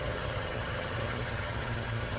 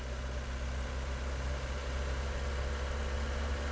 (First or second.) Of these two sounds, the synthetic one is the first